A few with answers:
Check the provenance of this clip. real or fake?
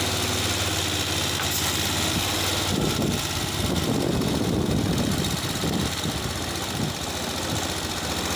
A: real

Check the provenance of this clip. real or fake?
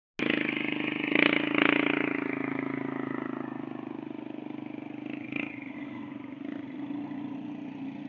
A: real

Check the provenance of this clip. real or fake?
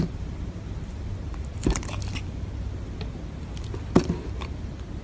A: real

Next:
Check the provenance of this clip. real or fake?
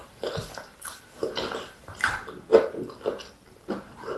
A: real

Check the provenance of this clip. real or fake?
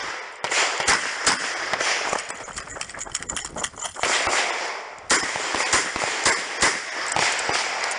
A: real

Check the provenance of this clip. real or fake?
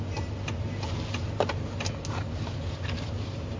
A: real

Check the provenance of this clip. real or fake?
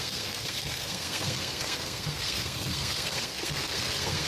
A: fake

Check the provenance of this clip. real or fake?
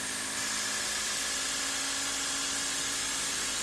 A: real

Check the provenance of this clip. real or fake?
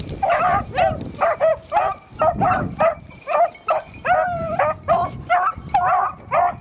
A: fake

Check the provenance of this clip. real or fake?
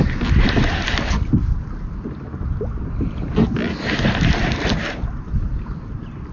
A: real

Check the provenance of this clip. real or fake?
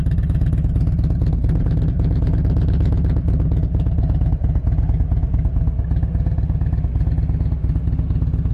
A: real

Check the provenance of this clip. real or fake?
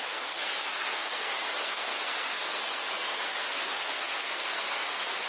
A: fake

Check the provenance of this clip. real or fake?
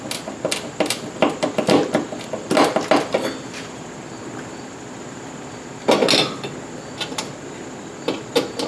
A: real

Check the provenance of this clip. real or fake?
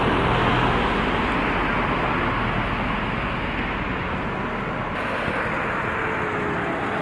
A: real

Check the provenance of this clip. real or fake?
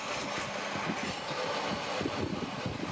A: real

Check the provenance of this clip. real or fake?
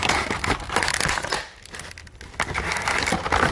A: real